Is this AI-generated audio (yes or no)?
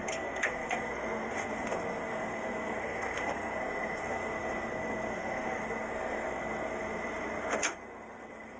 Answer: yes